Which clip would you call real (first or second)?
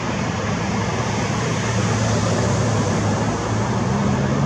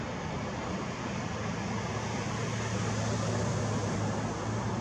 second